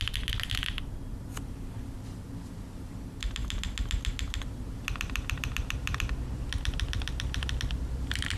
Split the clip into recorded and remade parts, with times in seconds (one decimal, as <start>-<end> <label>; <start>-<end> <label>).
0.0-8.4 recorded